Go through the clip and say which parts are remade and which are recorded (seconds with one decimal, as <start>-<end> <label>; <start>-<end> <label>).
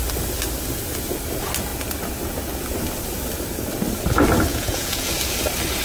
0.0-4.5 recorded; 4.5-5.1 remade; 5.1-5.8 recorded